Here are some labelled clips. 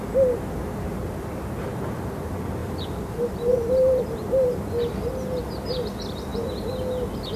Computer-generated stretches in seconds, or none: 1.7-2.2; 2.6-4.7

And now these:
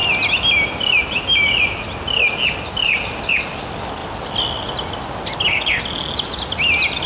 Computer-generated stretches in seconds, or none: none

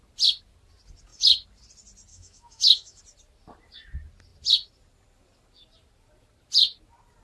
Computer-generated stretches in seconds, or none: 2.1-3.0

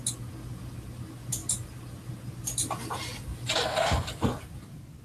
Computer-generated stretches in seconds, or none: none

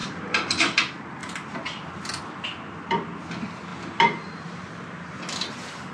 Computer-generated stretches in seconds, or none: 0.0-0.6; 3.7-5.2